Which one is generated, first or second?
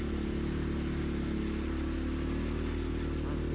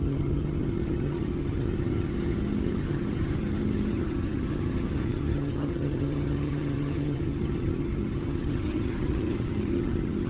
second